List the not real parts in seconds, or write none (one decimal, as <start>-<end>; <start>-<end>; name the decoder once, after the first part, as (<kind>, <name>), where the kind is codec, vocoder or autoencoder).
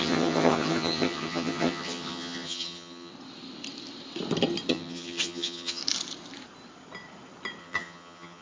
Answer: 0.0-3.1 (vocoder, HiFi-GAN); 4.7-5.8; 7.6-8.4